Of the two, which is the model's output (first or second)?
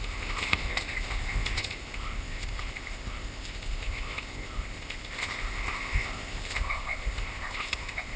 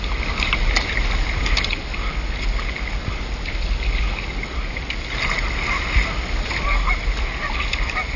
first